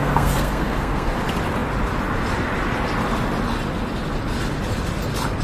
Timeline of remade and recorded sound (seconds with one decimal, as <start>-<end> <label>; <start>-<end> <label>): 0.0-1.1 remade; 1.1-5.4 recorded